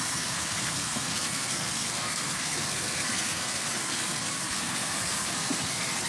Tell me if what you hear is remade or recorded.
remade